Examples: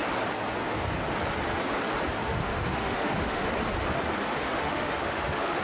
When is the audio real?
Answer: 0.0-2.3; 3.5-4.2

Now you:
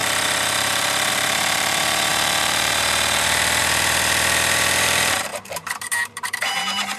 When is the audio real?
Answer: none

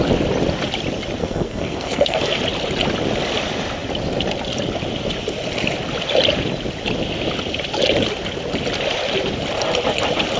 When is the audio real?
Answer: 0.0-1.2; 2.4-10.4

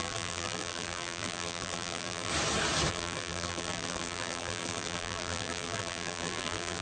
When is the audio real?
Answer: 2.3-2.9

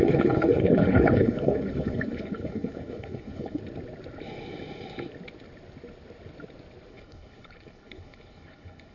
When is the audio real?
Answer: 3.6-6.9

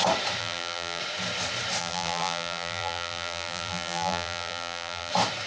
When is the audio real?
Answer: 0.0-0.4; 1.0-1.8; 5.1-5.5